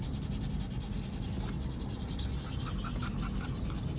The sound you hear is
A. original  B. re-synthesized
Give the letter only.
A